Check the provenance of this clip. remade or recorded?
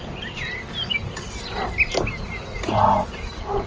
recorded